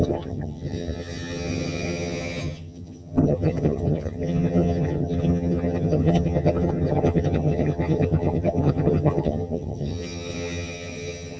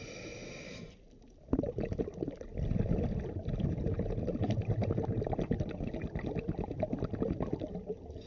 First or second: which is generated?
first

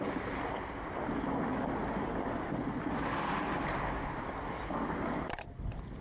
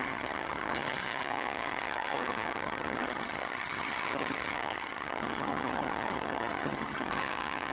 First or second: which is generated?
second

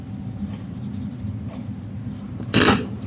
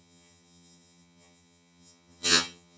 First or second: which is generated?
second